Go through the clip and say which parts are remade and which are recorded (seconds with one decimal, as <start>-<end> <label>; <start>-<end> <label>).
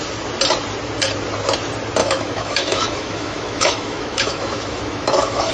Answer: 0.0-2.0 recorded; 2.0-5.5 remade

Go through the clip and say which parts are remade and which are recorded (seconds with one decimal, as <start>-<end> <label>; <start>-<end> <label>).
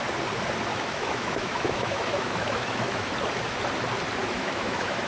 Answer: 0.0-0.7 recorded; 0.7-3.1 remade; 3.1-4.2 recorded; 4.2-5.1 remade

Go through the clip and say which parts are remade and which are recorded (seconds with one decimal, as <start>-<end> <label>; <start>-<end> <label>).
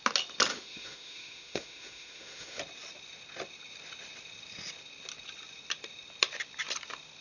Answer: 0.0-0.5 recorded; 0.5-2.6 remade; 2.6-7.2 recorded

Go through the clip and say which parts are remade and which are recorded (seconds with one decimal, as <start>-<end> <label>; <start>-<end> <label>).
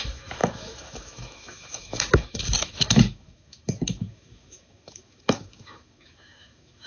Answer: 0.0-6.9 remade